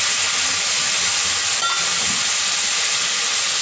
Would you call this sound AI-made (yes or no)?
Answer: no